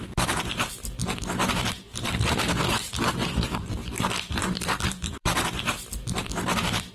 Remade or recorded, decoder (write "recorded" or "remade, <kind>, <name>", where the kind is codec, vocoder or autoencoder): remade, vocoder, BigVGAN v2